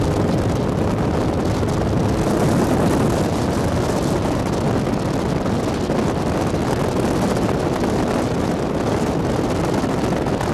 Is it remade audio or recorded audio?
recorded